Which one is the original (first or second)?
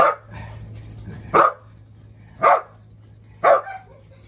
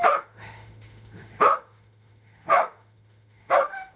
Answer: first